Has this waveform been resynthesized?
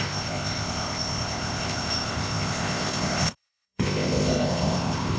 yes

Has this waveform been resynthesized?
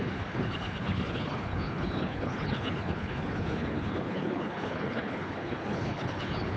yes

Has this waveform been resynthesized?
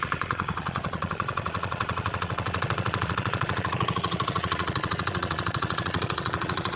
yes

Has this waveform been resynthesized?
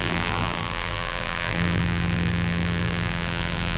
yes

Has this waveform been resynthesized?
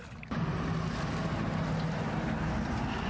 no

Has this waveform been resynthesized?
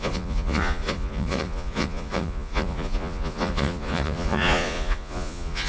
yes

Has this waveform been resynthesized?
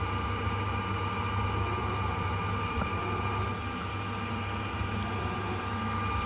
no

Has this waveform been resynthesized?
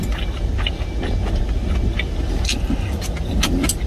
no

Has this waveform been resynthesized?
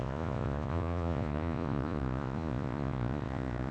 yes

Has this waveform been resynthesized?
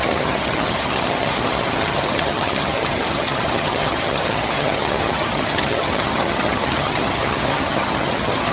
yes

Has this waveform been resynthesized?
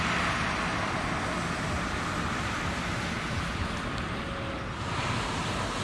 no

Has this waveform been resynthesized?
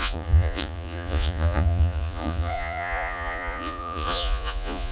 yes